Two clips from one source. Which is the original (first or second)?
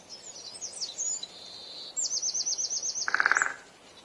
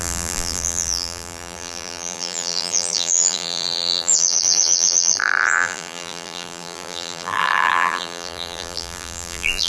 first